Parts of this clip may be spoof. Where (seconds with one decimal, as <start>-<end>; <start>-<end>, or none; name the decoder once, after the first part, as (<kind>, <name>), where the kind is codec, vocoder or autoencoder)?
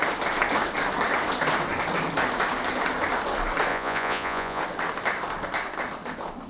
3.7-4.6 (vocoder, Vocos)